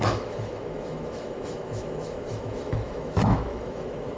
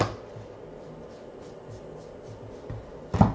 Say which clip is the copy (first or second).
first